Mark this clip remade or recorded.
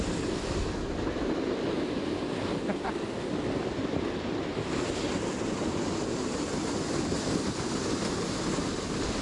recorded